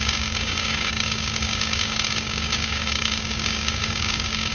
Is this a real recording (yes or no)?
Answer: no